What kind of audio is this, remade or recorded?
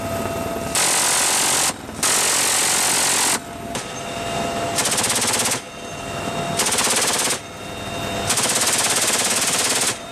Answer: recorded